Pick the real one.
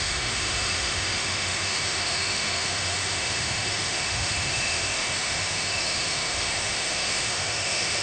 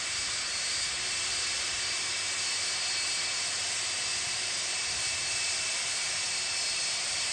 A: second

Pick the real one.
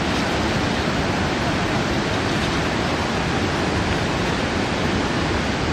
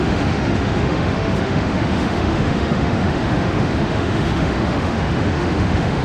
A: first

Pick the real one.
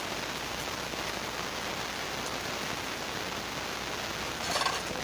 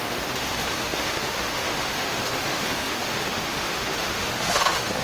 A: first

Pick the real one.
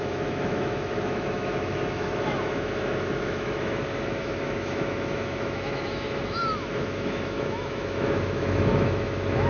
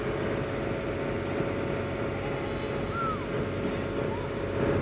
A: second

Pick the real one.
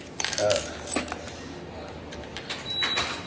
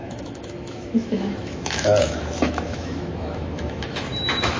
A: first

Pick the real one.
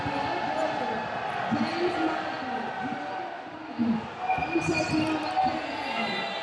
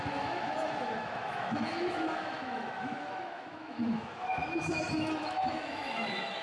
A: first